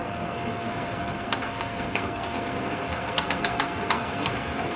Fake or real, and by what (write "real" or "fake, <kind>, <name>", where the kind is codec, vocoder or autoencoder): fake, codec, SNAC